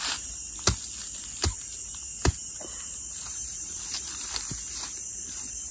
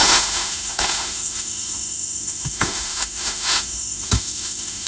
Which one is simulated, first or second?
second